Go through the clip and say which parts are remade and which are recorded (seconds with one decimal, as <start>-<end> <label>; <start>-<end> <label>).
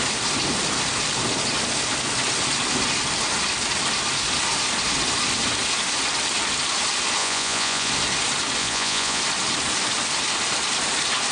0.0-7.2 recorded; 7.2-7.9 remade; 7.9-8.6 recorded; 8.6-9.2 remade; 9.2-11.3 recorded